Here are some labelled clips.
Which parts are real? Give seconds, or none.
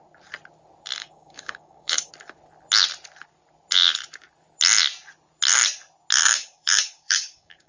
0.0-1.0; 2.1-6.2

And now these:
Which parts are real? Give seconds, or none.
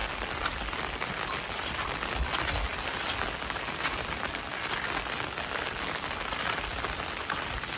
0.0-7.8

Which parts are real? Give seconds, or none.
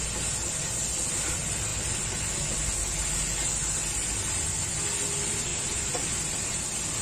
0.0-5.5; 6.6-7.0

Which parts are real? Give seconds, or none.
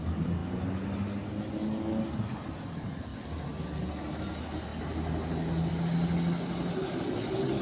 0.0-7.6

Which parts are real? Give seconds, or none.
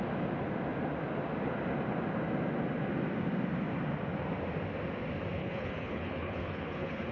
0.0-5.4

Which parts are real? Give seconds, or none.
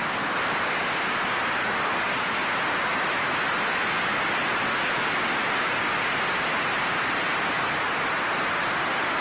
0.0-9.2